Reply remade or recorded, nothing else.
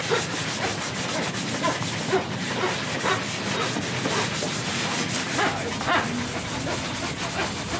remade